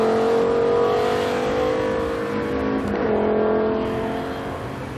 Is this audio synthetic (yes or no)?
no